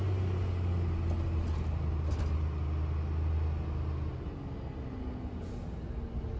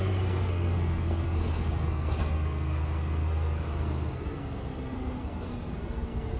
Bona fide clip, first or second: first